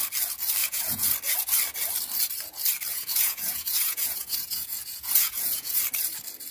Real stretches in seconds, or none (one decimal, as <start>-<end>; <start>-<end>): 0.0-0.6; 1.1-2.9; 5.8-6.5